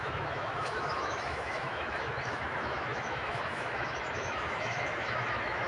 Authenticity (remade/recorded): remade